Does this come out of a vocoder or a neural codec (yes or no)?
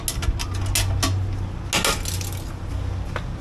no